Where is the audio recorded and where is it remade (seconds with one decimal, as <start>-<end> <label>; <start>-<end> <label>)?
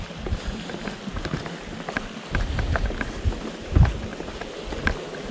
0.0-5.3 recorded